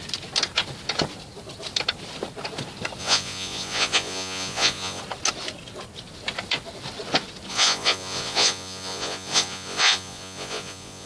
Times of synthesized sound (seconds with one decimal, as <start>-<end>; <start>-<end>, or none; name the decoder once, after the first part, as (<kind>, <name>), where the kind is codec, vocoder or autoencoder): 3.0-5.0 (vocoder, Vocos); 7.5-11.1